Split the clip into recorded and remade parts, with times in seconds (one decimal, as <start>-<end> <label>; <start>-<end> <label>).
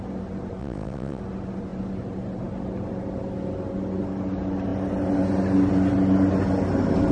0.0-0.6 recorded; 0.6-1.2 remade; 1.2-7.1 recorded